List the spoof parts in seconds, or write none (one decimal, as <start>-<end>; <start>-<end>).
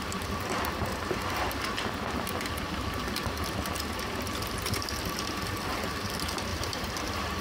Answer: 6.5-7.4